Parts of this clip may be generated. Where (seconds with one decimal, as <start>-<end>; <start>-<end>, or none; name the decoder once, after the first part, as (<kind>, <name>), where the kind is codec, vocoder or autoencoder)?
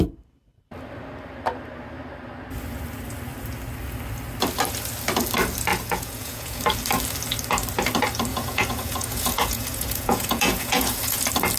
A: 5.7-6.6 (vocoder, Vocos); 8.3-11.2